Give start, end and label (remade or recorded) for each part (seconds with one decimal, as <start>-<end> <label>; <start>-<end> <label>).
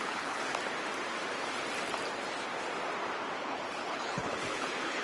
0.0-0.4 remade; 0.4-3.4 recorded; 3.4-5.0 remade